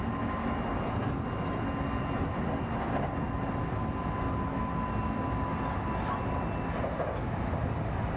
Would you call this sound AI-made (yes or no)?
no